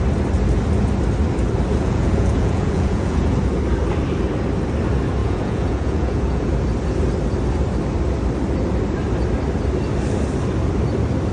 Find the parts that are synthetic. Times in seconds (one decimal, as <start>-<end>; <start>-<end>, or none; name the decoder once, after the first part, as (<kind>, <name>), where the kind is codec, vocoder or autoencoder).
1.7-3.4 (vocoder, Vocos); 5.2-6.5